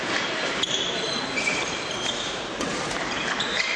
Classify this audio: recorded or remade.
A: remade